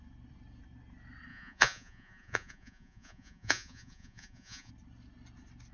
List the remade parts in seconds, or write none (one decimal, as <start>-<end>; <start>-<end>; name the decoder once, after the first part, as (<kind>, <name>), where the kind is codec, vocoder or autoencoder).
1.3-4.7 (vocoder, Vocos)